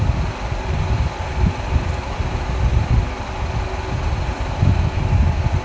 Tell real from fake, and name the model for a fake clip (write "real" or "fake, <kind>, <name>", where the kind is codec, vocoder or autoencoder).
real